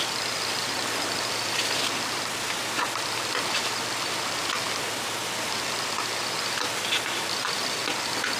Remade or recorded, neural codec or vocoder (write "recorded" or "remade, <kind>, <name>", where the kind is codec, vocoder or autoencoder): recorded